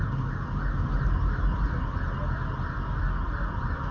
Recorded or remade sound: recorded